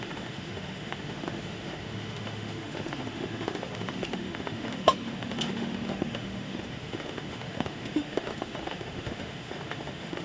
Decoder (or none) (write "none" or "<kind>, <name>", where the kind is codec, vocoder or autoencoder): autoencoder, DAC-VAE